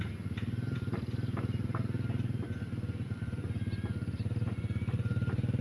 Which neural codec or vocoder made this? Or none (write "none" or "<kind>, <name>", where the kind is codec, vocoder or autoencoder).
none